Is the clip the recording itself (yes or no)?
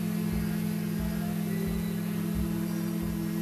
yes